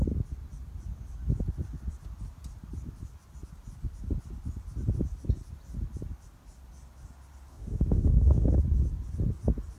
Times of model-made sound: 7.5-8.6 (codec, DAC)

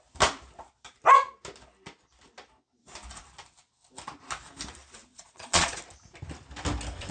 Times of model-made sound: 5.1-5.8 (vocoder, Vocos)

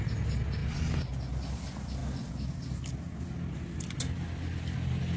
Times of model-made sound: none

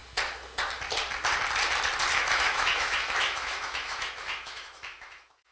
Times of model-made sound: 2.1-5.5 (autoencoder, DAC-VAE)

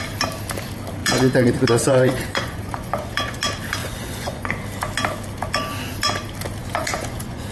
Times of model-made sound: 1.0-3.4 (vocoder, Vocos); 3.8-4.5; 6.6-7.5